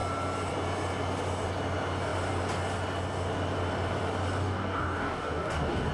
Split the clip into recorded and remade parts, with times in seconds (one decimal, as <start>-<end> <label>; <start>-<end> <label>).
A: 0.0-4.4 recorded; 4.4-5.9 remade